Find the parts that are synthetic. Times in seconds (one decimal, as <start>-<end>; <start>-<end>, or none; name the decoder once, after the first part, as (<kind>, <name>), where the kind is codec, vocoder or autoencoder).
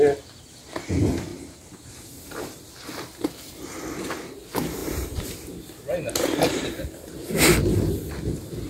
1.3-2.6 (vocoder, BigVGAN v2); 4.8-7.1